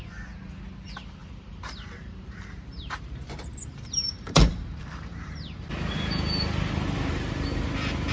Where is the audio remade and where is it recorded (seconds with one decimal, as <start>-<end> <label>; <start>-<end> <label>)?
0.0-1.2 recorded; 1.2-5.6 remade; 5.6-8.1 recorded